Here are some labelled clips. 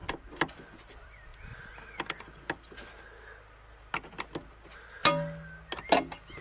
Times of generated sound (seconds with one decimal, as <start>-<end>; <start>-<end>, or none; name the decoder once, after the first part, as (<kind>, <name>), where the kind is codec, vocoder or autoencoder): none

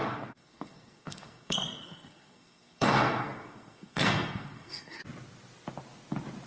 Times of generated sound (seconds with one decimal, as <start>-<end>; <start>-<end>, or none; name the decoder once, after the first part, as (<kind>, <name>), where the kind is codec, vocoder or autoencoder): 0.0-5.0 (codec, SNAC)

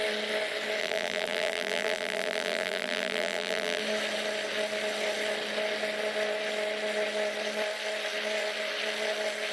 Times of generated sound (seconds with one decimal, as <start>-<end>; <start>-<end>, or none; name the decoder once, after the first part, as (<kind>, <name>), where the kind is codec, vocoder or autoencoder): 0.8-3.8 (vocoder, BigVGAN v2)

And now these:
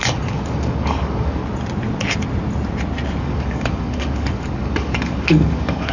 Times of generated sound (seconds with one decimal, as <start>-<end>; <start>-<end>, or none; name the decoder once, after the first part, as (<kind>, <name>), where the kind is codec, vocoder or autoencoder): 0.0-1.4 (codec, DAC); 3.2-5.9